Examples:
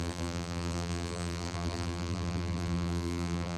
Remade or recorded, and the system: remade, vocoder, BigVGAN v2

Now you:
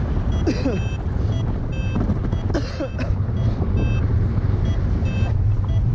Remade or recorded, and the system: recorded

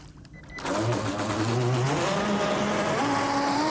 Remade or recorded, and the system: recorded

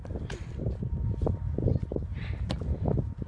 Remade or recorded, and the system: recorded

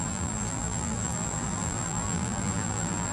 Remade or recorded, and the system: remade, vocoder, BigVGAN v2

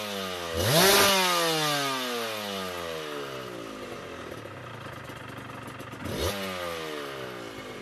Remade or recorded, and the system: recorded